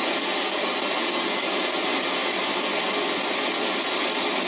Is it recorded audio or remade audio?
recorded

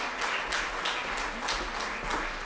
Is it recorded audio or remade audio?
recorded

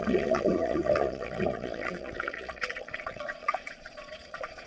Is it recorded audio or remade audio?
remade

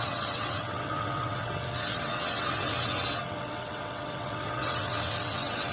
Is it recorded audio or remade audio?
remade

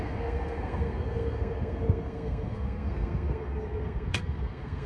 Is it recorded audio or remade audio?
remade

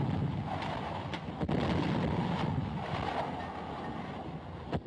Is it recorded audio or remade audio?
recorded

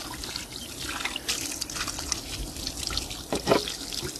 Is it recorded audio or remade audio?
recorded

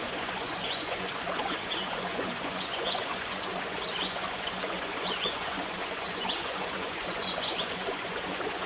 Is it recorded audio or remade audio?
remade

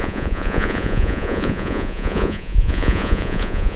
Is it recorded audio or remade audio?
remade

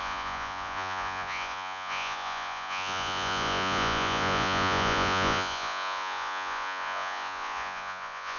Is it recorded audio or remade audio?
remade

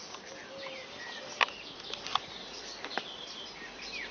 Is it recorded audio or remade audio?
recorded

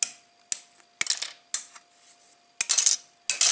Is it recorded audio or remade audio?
recorded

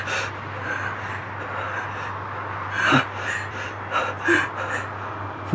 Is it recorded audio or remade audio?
recorded